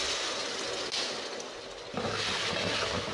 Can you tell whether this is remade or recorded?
recorded